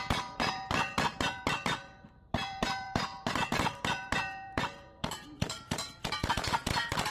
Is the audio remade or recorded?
remade